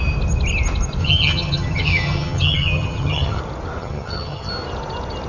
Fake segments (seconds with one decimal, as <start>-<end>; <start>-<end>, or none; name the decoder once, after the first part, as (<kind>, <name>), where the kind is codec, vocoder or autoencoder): 1.0-3.4 (vocoder, HiFi-GAN); 3.8-4.5